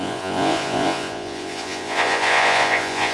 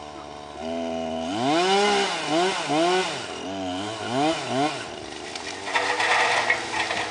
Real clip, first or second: second